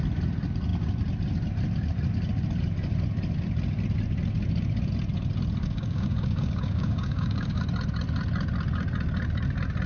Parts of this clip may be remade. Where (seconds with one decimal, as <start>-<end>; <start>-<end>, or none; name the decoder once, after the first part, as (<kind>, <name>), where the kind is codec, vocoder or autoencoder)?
5.6-7.6 (codec, DAC)